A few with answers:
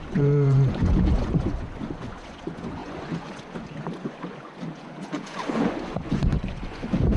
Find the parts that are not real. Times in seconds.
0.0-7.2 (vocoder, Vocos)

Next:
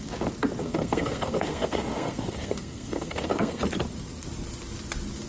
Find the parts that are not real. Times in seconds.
0.6-3.6 (codec, SNAC)

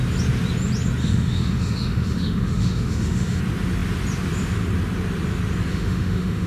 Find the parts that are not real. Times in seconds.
1.0-3.4 (autoencoder, DAC-VAE); 5.7-6.5

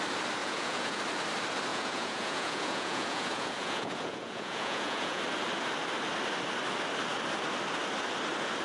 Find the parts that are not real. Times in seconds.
0.4-1.0 (vocoder, Vocos); 1.7-5.2

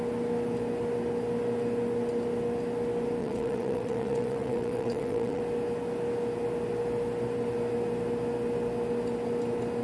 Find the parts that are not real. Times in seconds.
3.2-5.4 (vocoder, WaveNeXt)